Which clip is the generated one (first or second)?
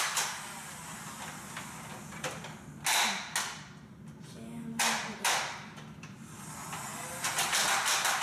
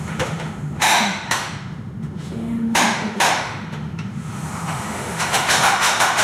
second